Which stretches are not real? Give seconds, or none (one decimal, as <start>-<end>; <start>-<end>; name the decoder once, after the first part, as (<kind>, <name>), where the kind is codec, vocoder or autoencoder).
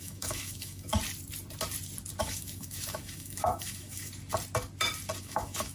0.0-0.9 (autoencoder, DAC-VAE); 2.2-4.1; 5.2-5.7